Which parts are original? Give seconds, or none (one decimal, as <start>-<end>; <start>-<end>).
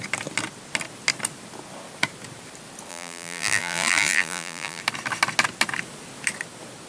0.0-2.9; 4.8-6.9